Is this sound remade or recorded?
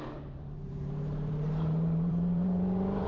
remade